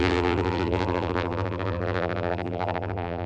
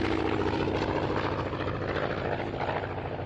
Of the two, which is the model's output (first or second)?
first